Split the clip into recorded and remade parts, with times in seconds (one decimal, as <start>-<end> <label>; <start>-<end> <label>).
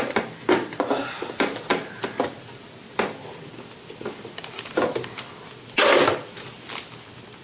0.0-7.4 recorded